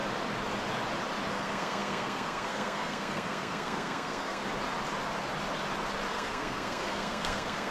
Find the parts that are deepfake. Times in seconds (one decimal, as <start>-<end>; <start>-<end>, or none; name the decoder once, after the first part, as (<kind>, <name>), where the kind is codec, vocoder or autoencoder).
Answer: 1.3-4.4 (codec, SNAC); 6.1-7.7

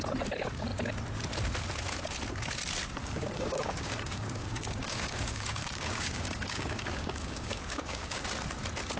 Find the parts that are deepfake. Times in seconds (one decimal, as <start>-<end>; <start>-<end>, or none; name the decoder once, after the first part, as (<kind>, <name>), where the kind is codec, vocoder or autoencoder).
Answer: 3.0-8.2 (codec, DAC)

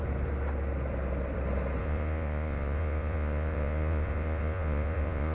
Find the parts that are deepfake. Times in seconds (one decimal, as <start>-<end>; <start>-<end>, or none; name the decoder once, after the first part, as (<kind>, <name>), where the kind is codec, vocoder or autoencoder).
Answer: 1.8-5.3 (vocoder, Vocos)

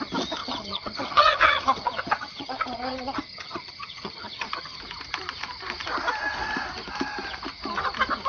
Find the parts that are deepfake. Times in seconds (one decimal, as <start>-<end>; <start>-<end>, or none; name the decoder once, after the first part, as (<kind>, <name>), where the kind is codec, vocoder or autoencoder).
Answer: 0.4-4.8 (vocoder, HiFi-GAN)

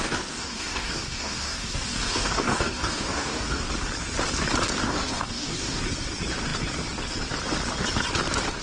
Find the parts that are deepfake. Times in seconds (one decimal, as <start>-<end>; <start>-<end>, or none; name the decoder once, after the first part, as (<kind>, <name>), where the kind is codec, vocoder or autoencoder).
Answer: 0.0-3.7 (codec, DAC); 4.8-5.8

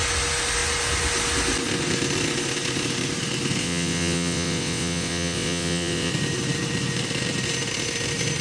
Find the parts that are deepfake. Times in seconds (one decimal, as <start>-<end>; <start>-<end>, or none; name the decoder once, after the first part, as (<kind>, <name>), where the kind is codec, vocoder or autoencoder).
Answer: 3.6-6.1 (vocoder, WaveNeXt)

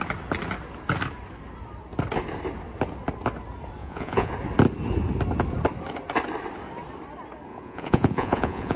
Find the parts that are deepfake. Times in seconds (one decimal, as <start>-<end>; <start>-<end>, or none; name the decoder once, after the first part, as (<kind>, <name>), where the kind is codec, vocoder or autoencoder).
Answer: 3.8-4.3 (vocoder, Vocos); 7.5-8.8